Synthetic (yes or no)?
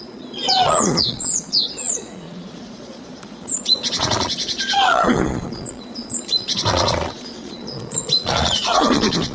yes